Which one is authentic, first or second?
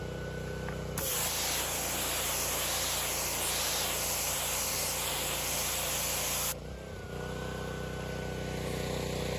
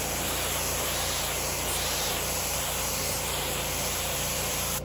first